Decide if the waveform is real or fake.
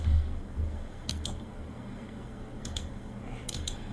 fake